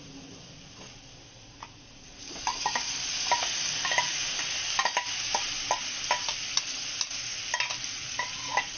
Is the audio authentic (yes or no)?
yes